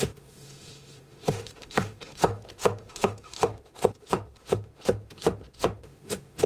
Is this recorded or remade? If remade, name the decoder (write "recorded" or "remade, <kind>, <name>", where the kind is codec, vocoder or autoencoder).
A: remade, autoencoder, DAC-VAE